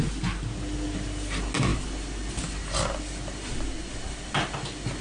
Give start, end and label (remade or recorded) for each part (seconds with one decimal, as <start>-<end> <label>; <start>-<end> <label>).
0.0-5.0 recorded